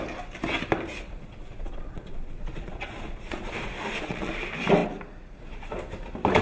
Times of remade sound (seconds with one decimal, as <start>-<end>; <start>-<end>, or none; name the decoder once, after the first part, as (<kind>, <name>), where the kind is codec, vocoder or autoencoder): 0.9-4.3 (vocoder, Vocos)